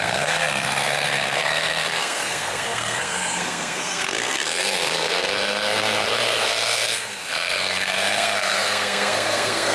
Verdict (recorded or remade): remade